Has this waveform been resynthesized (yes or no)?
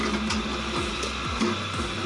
no